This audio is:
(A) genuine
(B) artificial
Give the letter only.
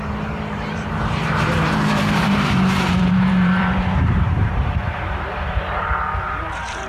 B